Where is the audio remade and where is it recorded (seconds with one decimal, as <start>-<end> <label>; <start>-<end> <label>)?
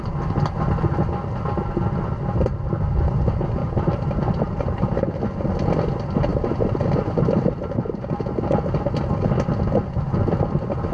0.0-3.6 recorded; 3.6-5.2 remade; 5.2-6.3 recorded; 6.3-8.1 remade; 8.1-10.9 recorded